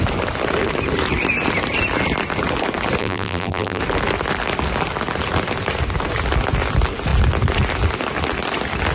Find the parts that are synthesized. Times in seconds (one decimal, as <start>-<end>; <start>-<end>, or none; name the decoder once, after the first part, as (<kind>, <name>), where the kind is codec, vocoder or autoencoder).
3.0-3.8 (vocoder, BigVGAN v2)